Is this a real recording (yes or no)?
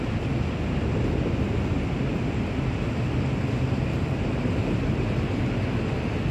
yes